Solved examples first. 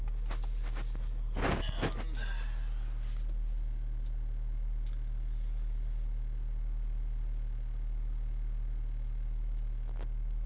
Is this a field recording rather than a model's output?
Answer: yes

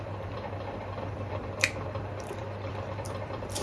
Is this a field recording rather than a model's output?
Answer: no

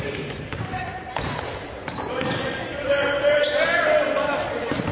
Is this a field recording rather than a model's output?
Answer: no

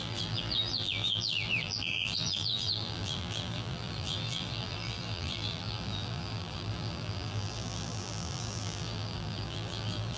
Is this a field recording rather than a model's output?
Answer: no